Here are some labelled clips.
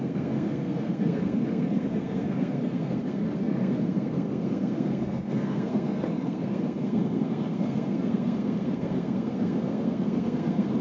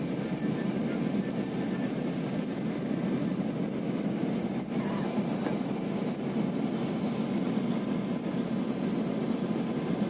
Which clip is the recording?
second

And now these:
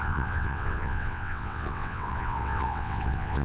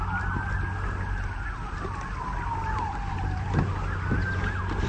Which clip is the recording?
second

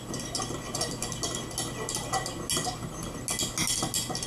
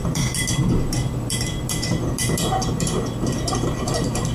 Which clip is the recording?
first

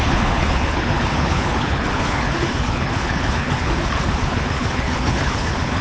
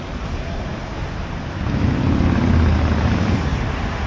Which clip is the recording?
second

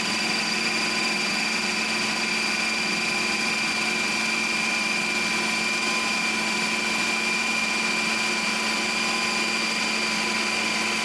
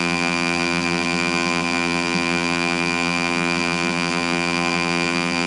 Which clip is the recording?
first